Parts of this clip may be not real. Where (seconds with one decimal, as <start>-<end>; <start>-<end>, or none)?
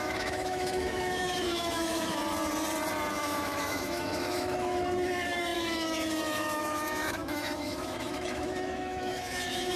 0.0-2.2; 3.1-9.8